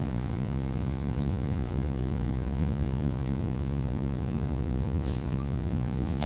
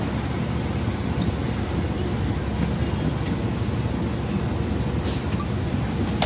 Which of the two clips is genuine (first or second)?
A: second